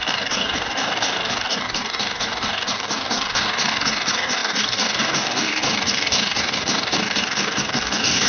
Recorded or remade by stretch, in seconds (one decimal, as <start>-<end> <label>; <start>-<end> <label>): 0.0-8.3 remade